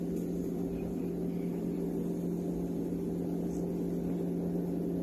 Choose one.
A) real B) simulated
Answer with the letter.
A